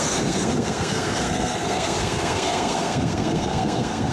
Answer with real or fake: fake